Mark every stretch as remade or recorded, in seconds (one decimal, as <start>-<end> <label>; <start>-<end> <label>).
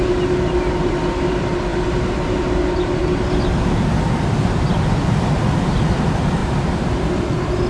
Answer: 0.0-3.5 recorded; 3.5-5.6 remade; 5.6-7.7 recorded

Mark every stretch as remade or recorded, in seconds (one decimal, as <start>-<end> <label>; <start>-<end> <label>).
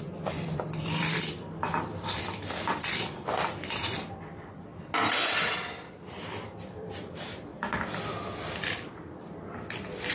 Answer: 0.0-4.7 remade; 4.7-5.9 recorded; 5.9-7.5 remade; 7.5-8.2 recorded; 8.2-10.1 remade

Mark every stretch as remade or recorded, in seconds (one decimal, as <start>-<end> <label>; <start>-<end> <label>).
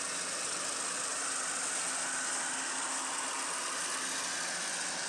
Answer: 0.0-5.1 recorded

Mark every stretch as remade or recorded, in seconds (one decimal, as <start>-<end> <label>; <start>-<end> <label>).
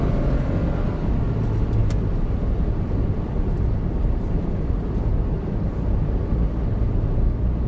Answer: 0.0-1.8 recorded; 1.8-4.9 remade; 4.9-7.7 recorded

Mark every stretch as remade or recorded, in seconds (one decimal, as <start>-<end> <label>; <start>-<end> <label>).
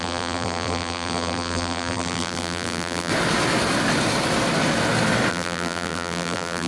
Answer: 0.0-3.1 remade; 3.1-5.3 recorded; 5.3-6.7 remade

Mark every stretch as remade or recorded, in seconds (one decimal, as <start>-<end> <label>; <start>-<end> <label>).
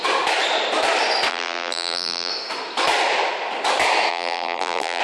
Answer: 0.0-1.3 recorded; 1.3-2.3 remade; 2.3-4.1 recorded; 4.1-5.0 remade